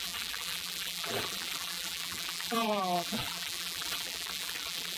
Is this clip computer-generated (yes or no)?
yes